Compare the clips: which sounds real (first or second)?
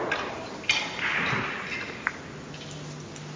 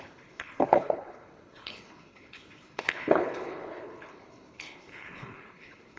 first